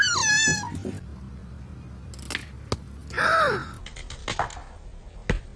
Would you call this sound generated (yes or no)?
no